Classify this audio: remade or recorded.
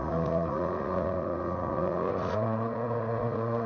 remade